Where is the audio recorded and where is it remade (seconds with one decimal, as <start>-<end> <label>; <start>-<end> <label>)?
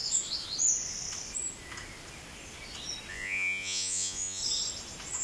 0.0-3.1 recorded; 3.1-4.4 remade; 4.4-5.2 recorded